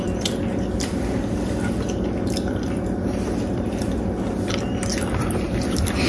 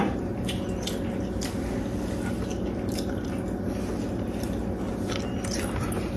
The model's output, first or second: first